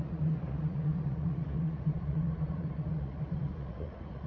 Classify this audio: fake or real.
fake